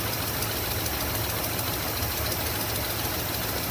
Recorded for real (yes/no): yes